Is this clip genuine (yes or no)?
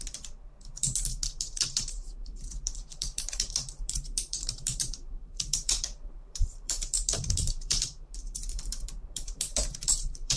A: no